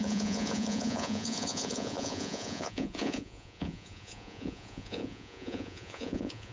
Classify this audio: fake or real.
fake